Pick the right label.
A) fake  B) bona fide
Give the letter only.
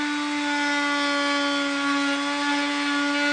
B